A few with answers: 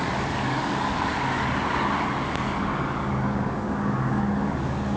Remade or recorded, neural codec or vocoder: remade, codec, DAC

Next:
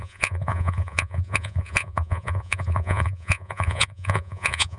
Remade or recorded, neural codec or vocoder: remade, vocoder, Vocos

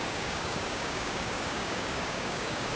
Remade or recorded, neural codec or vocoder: remade, codec, DAC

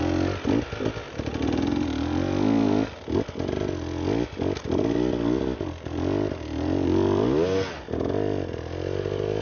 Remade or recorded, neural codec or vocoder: recorded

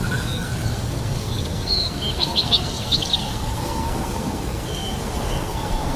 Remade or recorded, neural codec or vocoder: remade, codec, SNAC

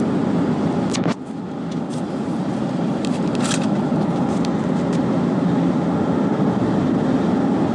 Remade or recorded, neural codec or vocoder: recorded